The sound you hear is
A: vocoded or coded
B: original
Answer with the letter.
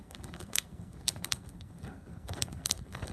A